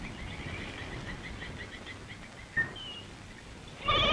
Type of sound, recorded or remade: recorded